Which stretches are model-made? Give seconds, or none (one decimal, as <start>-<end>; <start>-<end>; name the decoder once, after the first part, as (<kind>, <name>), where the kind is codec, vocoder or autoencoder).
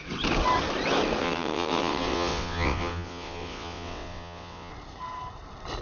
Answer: 1.2-4.7 (vocoder, WaveNeXt)